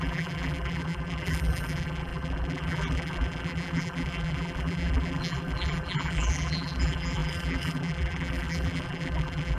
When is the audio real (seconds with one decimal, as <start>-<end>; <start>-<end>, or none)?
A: none